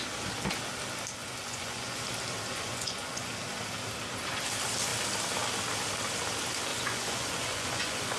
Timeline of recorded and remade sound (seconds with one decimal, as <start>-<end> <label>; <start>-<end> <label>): 0.0-1.2 recorded; 1.2-2.0 remade; 2.0-2.5 recorded; 2.5-3.3 remade; 3.3-6.7 recorded; 6.7-8.2 remade